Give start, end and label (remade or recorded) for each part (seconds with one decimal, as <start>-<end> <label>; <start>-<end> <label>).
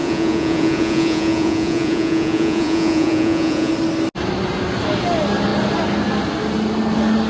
0.0-3.7 remade; 3.7-7.3 recorded